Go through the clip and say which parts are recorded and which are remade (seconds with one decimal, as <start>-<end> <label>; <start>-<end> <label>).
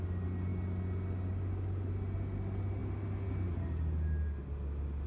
0.0-5.1 recorded